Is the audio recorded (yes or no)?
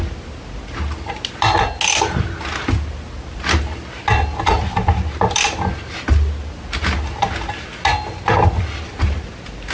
yes